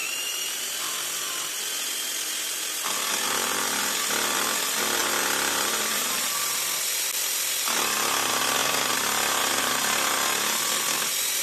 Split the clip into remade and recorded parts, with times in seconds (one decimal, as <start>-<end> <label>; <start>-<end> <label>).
0.0-0.6 remade; 0.6-5.0 recorded; 5.0-6.4 remade; 6.4-11.4 recorded